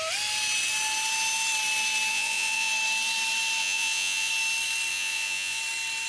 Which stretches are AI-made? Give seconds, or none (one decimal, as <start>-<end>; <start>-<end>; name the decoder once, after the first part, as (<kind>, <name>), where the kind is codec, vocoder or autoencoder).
2.1-2.7 (vocoder, Vocos); 3.6-4.3; 4.9-5.6